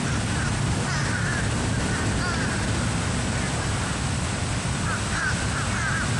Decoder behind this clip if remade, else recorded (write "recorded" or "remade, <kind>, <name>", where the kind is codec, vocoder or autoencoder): recorded